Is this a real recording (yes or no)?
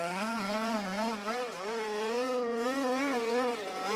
no